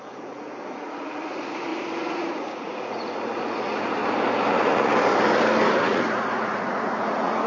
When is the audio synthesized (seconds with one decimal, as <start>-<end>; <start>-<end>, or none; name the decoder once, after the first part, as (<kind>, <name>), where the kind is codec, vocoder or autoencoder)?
0.0-4.0 (vocoder, Vocos); 4.5-4.9; 5.8-7.5